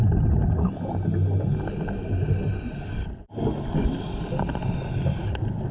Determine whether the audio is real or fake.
real